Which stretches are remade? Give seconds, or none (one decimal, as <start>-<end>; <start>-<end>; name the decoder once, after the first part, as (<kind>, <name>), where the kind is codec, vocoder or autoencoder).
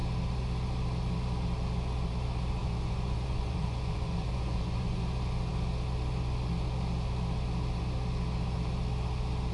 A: 2.6-5.0 (vocoder, Vocos)